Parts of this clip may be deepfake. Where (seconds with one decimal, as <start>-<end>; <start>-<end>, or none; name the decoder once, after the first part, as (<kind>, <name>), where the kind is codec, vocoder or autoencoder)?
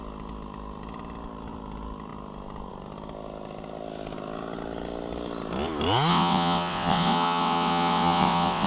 6.1-8.7 (vocoder, WaveNeXt)